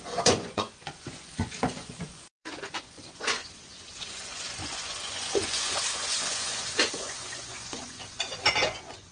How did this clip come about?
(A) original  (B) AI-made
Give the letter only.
B